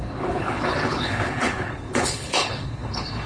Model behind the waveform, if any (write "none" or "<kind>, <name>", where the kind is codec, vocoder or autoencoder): codec, HILCodec